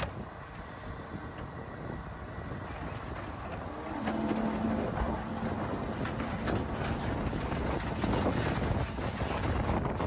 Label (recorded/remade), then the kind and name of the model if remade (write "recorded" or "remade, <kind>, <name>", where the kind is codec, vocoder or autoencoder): recorded